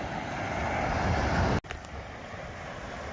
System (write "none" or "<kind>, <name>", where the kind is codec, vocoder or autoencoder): none